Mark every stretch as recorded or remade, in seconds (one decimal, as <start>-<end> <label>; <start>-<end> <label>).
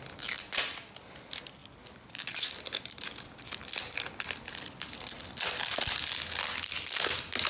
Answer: 0.0-7.5 recorded